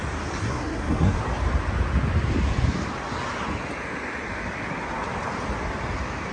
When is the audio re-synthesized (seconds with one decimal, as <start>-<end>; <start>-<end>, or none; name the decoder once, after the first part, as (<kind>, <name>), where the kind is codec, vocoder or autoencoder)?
0.4-1.2 (codec, SNAC)